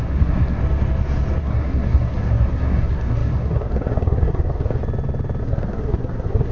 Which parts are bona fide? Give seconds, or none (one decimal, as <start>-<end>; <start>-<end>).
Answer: 0.6-1.4; 4.8-5.4